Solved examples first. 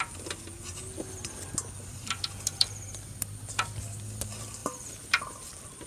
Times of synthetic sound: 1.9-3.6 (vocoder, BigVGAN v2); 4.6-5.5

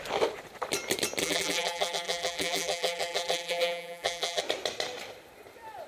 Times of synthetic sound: 1.2-4.4 (vocoder, BigVGAN v2)

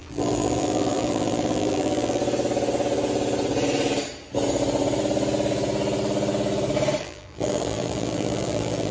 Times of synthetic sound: 0.0-2.2 (vocoder, BigVGAN v2); 7.0-8.9

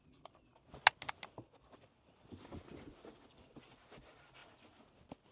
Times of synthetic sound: 0.0-0.5 (vocoder, BigVGAN v2); 1.4-2.5; 3.0-4.4

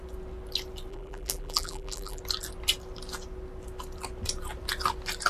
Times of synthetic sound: 0.9-2.2 (vocoder, BigVGAN v2)